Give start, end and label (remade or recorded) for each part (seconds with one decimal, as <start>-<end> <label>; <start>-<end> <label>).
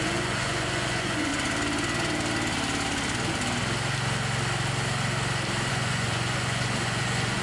0.0-1.3 remade; 1.3-5.7 recorded; 5.7-7.4 remade